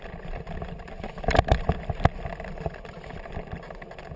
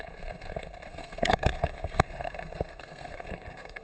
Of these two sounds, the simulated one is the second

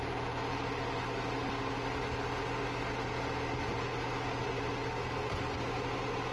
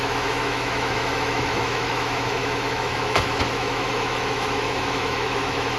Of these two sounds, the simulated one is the second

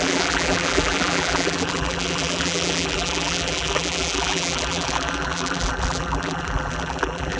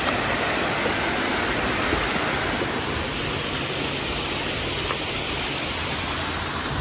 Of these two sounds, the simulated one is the first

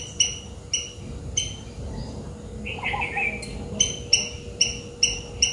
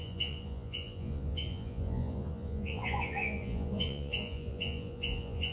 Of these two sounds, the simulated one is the second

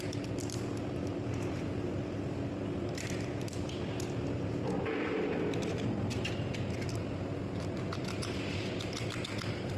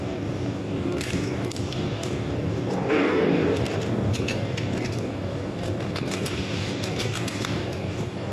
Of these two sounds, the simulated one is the second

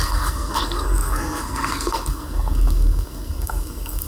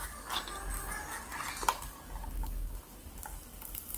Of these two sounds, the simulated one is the first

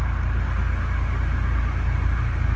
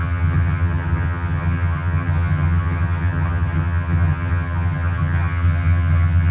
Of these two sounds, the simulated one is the second